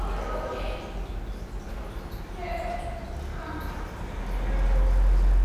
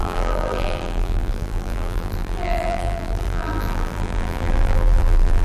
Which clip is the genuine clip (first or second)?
first